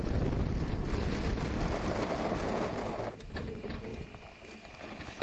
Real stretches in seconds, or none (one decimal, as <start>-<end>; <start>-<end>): 0.0-2.4; 2.9-5.2